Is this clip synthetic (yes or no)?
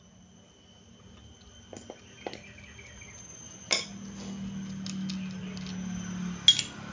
no